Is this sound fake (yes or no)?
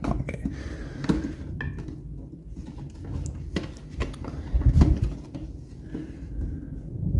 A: no